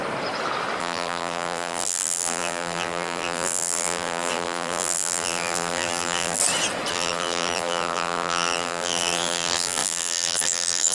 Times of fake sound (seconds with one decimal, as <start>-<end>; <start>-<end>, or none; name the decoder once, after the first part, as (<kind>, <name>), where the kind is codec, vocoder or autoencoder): 0.8-6.4 (vocoder, BigVGAN v2); 6.9-10.9